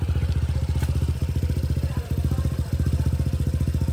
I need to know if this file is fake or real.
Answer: real